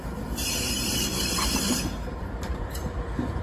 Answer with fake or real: fake